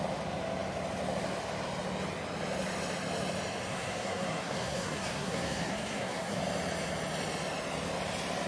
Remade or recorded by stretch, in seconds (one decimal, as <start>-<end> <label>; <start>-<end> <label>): 0.0-3.7 recorded; 3.7-6.4 remade; 6.4-8.5 recorded

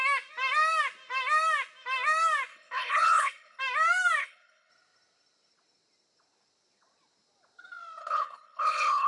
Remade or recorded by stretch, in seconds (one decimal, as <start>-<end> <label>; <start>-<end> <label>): 0.0-2.5 recorded; 2.5-3.6 remade; 3.6-4.2 recorded; 4.2-4.7 remade; 4.7-8.0 recorded; 8.0-9.1 remade

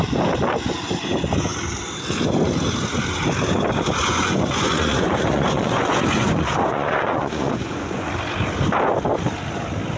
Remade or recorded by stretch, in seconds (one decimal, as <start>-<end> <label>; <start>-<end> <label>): 0.0-4.0 recorded; 4.0-8.1 remade; 8.1-10.0 recorded